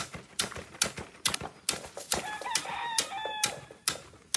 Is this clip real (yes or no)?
yes